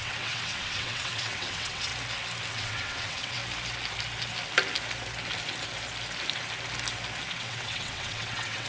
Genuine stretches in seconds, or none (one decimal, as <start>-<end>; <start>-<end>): 1.9-2.5; 3.4-7.3